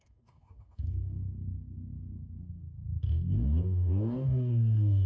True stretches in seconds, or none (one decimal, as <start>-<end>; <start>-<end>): none